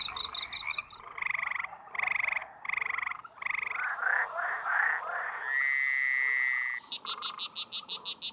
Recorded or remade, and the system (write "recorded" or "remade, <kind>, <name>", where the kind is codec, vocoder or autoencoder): recorded